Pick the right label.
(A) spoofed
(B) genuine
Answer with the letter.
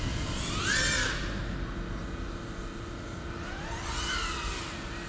B